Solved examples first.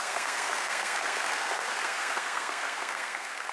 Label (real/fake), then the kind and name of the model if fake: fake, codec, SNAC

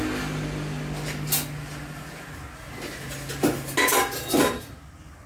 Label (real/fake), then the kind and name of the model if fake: real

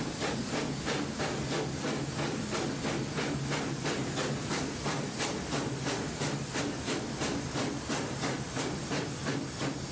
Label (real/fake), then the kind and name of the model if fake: real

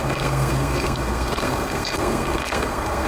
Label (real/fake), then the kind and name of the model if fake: fake, codec, SNAC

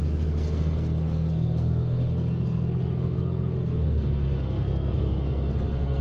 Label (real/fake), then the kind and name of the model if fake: fake, codec, SNAC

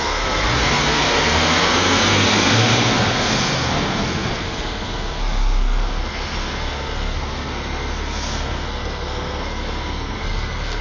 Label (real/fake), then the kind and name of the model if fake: fake, codec, SNAC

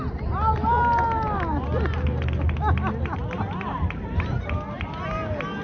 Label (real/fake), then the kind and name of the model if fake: real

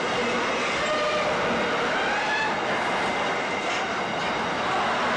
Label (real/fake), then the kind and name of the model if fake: real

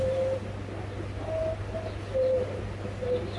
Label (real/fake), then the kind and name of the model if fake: real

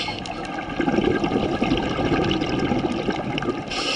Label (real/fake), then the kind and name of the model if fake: real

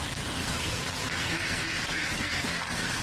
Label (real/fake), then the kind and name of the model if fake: fake, codec, SNAC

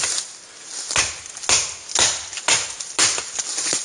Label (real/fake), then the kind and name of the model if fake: real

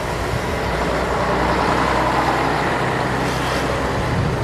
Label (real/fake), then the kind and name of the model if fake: real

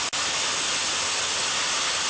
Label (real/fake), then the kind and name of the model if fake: real